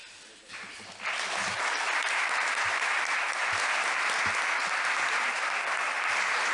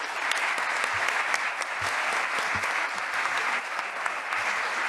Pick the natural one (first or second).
second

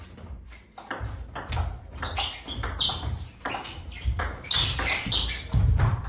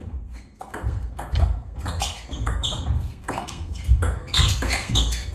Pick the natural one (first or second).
first